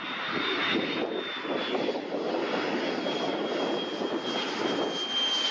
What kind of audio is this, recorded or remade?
recorded